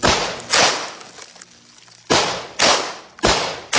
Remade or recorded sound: recorded